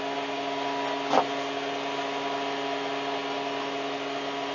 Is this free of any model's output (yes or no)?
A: yes